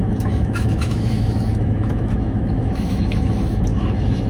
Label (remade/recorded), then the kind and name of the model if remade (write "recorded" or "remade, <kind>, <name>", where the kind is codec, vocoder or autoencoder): remade, autoencoder, DAC-VAE